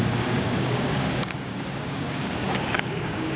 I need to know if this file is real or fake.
fake